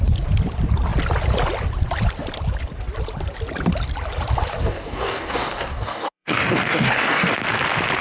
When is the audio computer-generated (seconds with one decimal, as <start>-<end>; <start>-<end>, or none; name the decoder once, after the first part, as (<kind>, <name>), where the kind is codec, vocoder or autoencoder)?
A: 4.6-7.3 (codec, DAC)